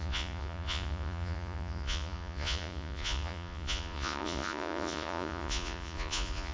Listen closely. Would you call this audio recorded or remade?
remade